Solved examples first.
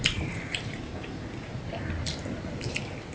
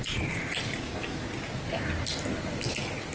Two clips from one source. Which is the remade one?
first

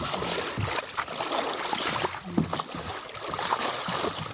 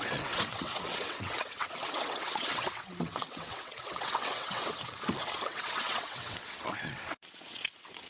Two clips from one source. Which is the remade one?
second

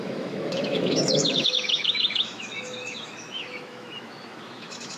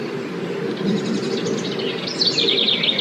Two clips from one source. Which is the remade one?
first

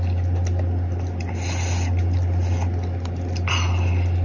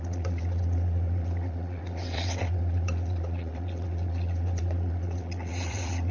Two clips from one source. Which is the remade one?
second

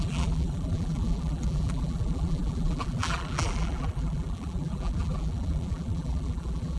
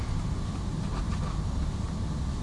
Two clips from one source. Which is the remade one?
first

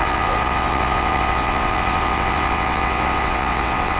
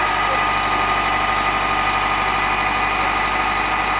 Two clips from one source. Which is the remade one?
first